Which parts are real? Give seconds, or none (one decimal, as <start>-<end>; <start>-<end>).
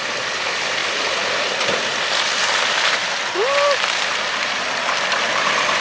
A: 0.8-2.1; 3.2-4.1